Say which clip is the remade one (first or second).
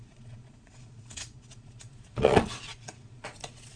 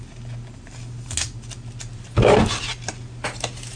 first